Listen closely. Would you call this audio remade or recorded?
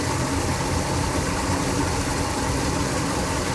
recorded